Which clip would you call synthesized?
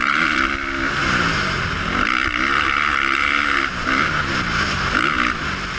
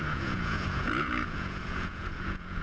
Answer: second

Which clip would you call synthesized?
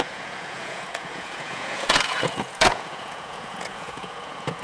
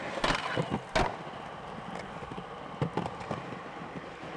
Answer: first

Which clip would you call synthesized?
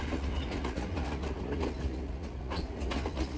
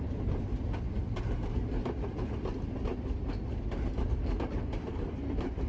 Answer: first